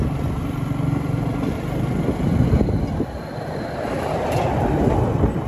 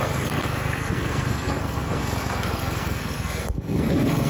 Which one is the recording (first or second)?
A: first